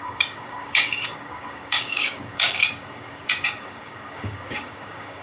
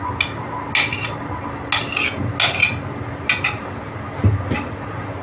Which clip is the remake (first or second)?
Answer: first